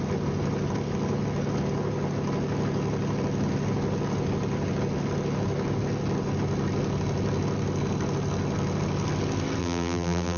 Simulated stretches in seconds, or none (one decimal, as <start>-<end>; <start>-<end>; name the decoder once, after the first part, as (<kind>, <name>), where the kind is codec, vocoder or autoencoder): 9.6-10.4 (vocoder, BigVGAN v2)

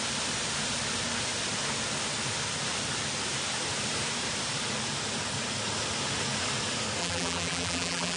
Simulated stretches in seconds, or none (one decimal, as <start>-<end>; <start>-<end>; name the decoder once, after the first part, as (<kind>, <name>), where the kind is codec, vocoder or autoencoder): 7.0-8.2 (vocoder, BigVGAN v2)

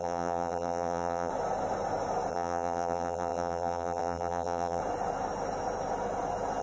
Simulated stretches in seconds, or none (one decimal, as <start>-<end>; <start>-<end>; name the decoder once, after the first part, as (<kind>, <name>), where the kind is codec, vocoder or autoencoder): 0.0-1.3 (vocoder, BigVGAN v2); 2.3-4.8

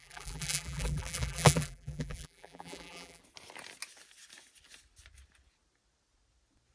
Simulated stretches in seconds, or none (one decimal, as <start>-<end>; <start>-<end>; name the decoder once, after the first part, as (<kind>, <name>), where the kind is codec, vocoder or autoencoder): 0.0-3.2 (vocoder, BigVGAN v2)